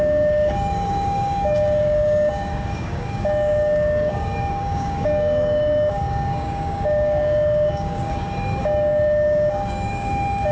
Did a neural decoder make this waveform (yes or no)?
yes